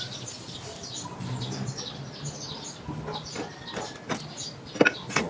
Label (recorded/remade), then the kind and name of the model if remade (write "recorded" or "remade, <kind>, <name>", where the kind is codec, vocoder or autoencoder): recorded